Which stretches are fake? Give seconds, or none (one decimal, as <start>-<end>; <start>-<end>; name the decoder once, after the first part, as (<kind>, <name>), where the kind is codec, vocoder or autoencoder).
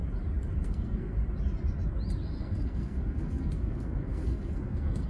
0.6-1.2 (codec, SNAC); 2.4-5.1